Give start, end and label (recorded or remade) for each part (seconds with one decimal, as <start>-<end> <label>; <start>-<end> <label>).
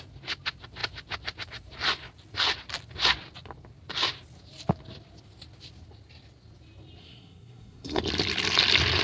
0.0-7.0 recorded; 7.0-8.0 remade; 8.0-9.0 recorded